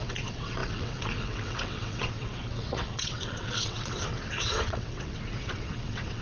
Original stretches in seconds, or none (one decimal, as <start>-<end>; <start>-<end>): none